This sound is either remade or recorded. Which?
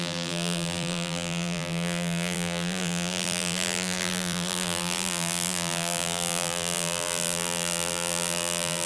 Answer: remade